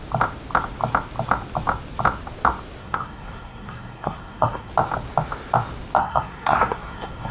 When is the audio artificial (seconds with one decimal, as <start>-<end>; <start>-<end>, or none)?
2.8-4.7; 6.0-7.3